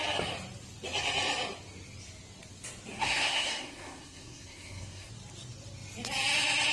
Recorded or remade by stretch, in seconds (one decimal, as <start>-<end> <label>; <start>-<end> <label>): 0.0-2.9 recorded; 2.9-5.1 remade; 5.1-6.7 recorded